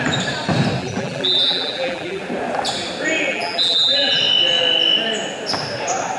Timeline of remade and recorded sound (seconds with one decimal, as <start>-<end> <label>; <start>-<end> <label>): 0.0-0.8 recorded; 0.8-2.2 remade; 2.2-3.3 recorded; 3.3-4.2 remade; 4.2-6.2 recorded